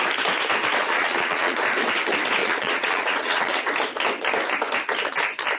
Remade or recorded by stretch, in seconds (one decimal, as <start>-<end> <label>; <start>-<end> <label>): 0.0-0.8 recorded; 0.8-1.6 remade; 1.6-2.4 recorded; 2.4-3.6 remade; 3.6-5.6 recorded